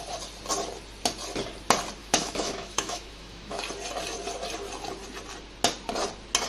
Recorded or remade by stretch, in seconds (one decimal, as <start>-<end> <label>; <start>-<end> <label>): 0.0-2.0 recorded; 2.0-3.6 remade; 3.6-6.5 recorded